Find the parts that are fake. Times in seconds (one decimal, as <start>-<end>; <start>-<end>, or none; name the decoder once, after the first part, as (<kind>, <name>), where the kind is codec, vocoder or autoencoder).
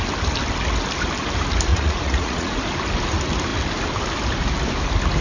1.7-2.6 (vocoder, Vocos)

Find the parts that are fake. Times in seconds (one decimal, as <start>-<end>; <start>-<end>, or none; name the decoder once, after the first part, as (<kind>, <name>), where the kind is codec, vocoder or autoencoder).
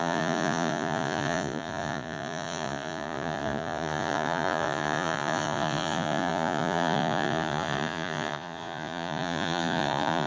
0.0-10.3 (vocoder, Vocos)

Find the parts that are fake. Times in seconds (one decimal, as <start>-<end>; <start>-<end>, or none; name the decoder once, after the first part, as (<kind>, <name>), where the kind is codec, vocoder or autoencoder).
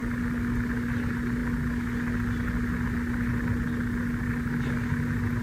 none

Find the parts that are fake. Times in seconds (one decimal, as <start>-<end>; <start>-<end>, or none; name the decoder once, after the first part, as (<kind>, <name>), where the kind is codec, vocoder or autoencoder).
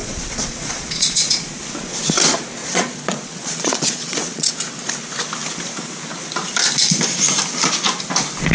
0.0-1.6 (vocoder, Vocos); 2.6-4.5